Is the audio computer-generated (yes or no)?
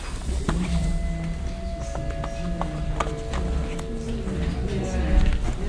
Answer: no